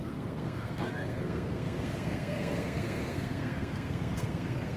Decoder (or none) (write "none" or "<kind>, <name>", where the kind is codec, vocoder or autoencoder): codec, SNAC